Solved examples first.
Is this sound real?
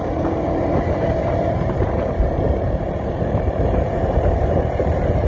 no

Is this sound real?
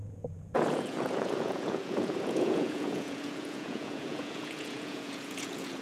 no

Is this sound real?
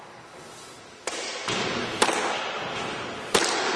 no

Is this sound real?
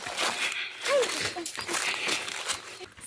yes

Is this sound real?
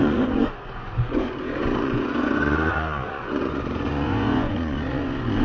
no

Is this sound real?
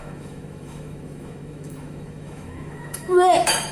no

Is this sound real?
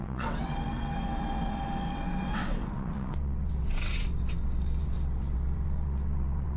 no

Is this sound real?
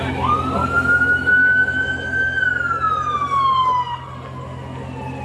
yes